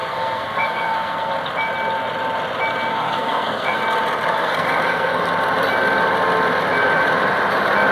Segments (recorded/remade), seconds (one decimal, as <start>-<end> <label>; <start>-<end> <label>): 0.0-1.3 remade; 1.3-2.9 recorded; 2.9-3.8 remade; 3.8-4.3 recorded; 4.3-5.2 remade; 5.2-7.9 recorded